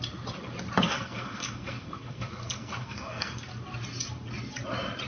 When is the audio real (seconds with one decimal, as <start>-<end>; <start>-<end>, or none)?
0.0-0.8; 3.5-5.1